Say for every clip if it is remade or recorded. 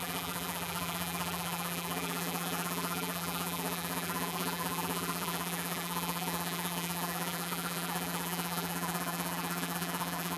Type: remade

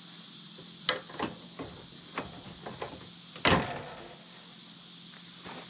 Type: recorded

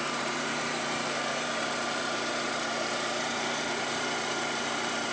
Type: remade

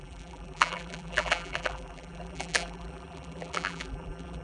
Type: remade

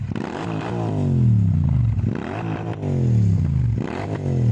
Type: recorded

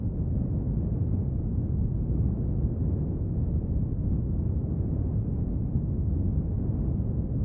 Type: recorded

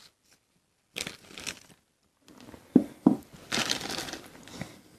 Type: recorded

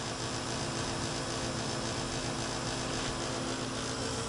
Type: recorded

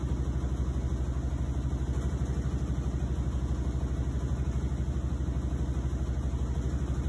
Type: recorded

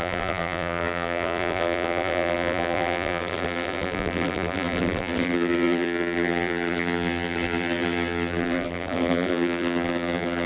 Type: remade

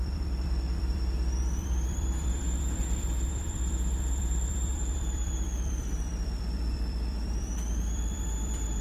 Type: remade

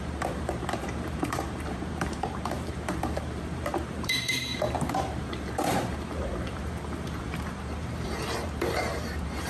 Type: remade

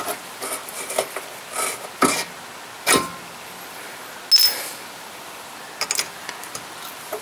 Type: recorded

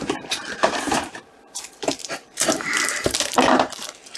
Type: remade